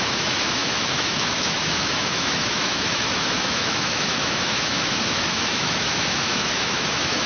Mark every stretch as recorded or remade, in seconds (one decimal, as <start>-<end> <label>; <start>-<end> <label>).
0.0-7.3 remade